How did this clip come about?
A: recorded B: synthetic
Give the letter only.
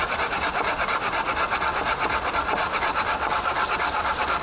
A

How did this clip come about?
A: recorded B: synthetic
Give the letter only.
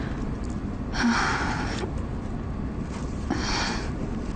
A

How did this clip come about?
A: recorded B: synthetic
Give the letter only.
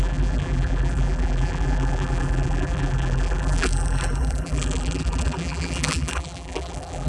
B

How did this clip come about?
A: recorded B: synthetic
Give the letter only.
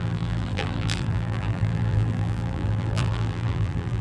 B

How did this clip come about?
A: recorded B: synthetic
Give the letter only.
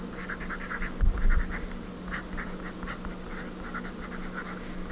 A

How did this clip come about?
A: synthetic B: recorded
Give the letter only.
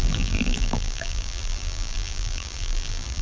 A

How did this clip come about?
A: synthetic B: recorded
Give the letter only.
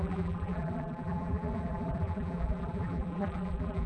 A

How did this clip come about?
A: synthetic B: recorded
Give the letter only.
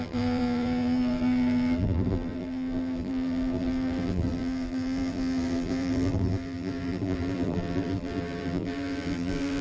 A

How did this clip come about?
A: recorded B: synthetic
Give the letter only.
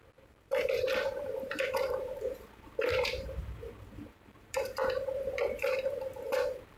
B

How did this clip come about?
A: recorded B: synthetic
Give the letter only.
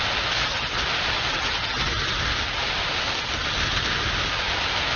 A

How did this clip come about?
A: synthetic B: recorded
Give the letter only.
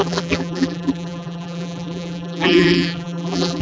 A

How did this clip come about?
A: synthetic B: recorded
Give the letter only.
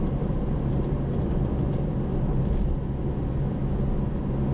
B